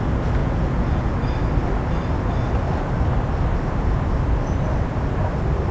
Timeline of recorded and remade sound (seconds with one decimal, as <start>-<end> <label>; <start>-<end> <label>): 0.0-0.4 recorded; 0.4-1.1 remade; 1.1-5.7 recorded